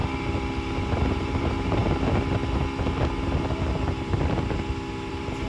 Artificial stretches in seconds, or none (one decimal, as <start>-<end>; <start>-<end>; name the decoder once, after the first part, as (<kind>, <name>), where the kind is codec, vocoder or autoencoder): 1.1-1.8 (vocoder, BigVGAN v2); 5.1-5.5